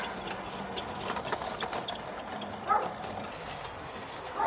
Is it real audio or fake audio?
real